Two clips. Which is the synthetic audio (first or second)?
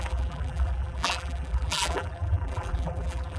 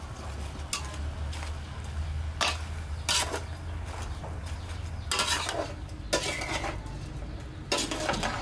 first